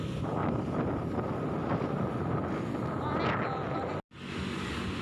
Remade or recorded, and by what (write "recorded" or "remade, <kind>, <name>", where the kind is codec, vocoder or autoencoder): recorded